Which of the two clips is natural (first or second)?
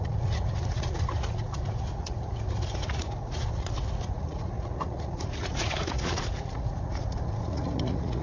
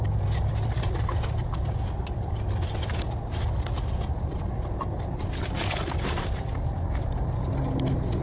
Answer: second